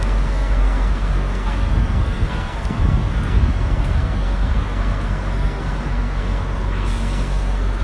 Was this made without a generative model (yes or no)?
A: no